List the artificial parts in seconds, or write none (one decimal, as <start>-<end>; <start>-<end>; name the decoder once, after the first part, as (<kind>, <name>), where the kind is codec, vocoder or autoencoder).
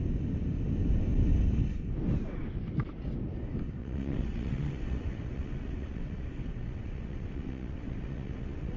3.8-8.8 (vocoder, WaveNeXt)